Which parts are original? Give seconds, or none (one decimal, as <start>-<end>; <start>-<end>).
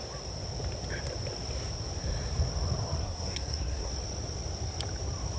0.0-3.0; 3.9-5.4